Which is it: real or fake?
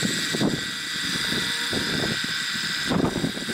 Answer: real